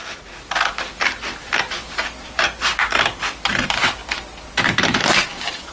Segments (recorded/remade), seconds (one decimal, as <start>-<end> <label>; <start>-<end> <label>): 0.0-1.7 recorded; 1.7-2.6 remade; 2.6-3.5 recorded; 3.5-4.0 remade; 4.0-4.8 recorded; 4.8-5.7 remade

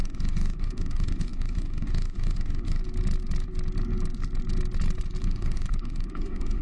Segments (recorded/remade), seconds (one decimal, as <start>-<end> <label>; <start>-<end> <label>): 0.0-2.8 remade; 2.8-5.2 recorded; 5.2-6.6 remade

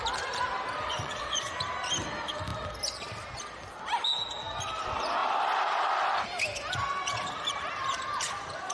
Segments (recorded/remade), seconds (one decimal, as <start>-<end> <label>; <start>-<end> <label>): 0.0-0.9 recorded; 0.9-1.5 remade; 1.5-8.7 recorded

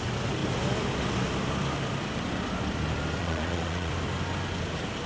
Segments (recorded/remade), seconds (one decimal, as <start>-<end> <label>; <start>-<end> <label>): 0.0-3.2 recorded; 3.2-3.9 remade; 3.9-5.1 recorded

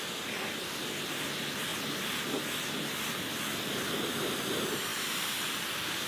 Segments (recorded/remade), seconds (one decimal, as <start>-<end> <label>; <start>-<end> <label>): 0.0-1.7 recorded; 1.7-3.9 remade; 3.9-6.1 recorded

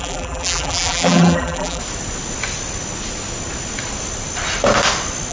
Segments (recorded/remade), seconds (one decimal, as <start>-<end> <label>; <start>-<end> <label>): 0.0-1.8 remade; 1.8-5.3 recorded

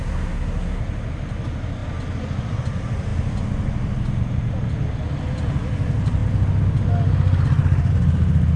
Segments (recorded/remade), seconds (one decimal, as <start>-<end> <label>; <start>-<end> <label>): 0.0-0.8 remade; 0.8-8.6 recorded

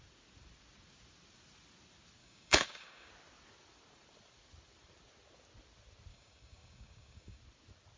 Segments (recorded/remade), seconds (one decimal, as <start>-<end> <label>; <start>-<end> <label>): 0.0-2.2 recorded; 2.2-3.1 remade; 3.1-6.1 recorded; 6.1-7.4 remade; 7.4-8.0 recorded